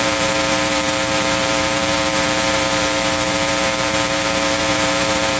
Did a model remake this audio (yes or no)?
yes